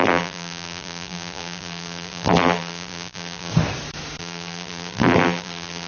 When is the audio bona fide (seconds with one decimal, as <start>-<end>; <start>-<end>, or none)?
3.5-4.2